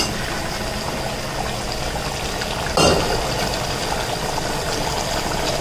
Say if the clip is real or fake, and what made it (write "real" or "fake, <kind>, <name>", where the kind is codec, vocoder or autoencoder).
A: real